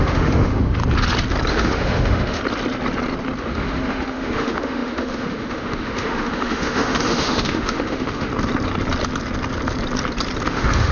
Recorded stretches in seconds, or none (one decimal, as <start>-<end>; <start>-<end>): 0.8-1.5; 2.4-3.4; 8.3-10.5